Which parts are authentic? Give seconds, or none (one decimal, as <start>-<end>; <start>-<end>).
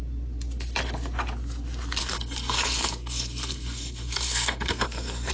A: 0.0-2.0